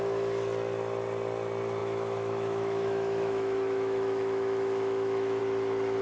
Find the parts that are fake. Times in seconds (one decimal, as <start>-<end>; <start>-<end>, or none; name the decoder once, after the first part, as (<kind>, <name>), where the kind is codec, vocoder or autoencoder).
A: 1.8-5.4 (autoencoder, DAC-VAE)